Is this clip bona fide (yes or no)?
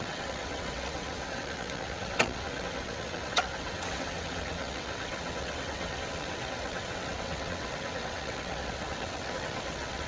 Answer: no